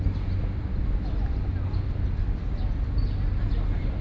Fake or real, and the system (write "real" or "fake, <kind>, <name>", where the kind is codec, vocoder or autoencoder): real